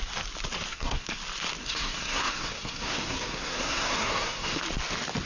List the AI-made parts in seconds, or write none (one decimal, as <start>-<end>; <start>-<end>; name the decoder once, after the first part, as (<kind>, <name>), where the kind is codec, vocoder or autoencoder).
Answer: 0.7-1.2 (codec, SNAC); 1.6-4.6